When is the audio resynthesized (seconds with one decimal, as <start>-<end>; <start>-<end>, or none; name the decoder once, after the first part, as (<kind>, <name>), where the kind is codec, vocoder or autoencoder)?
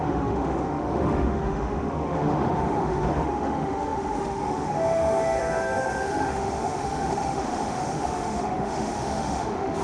0.0-9.8 (autoencoder, DAC-VAE)